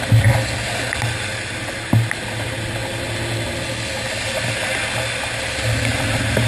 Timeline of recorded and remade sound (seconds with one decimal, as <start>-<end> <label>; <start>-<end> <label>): 0.0-6.5 recorded